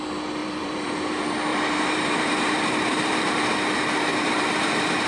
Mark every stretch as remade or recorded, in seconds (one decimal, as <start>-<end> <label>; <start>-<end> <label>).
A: 0.0-0.4 recorded; 0.4-0.9 remade; 0.9-1.5 recorded; 1.5-3.5 remade; 3.5-4.1 recorded; 4.1-5.1 remade